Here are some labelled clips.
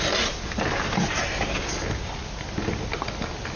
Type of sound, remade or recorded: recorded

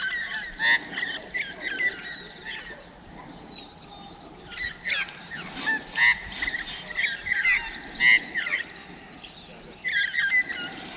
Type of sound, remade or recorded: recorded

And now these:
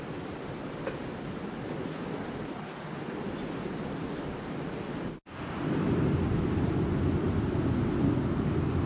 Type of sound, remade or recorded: recorded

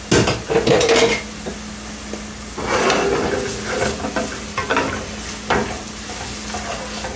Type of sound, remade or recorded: recorded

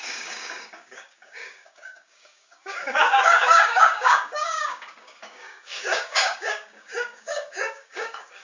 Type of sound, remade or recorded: remade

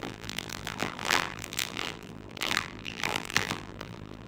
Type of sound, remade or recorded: remade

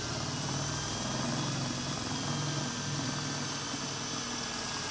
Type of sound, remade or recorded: recorded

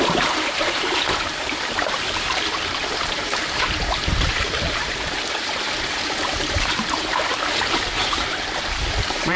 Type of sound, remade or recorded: remade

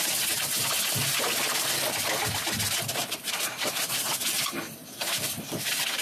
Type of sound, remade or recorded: recorded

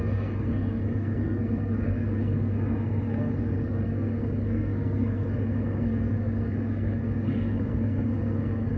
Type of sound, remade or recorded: remade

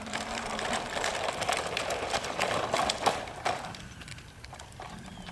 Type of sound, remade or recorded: remade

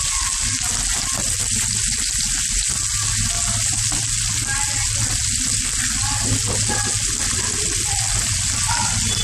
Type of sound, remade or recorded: recorded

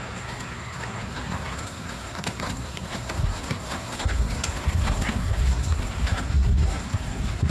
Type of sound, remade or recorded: remade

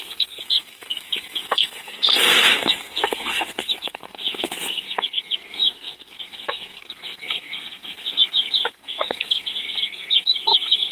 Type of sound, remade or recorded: remade